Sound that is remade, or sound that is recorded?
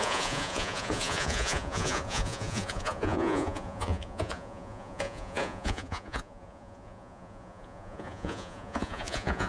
remade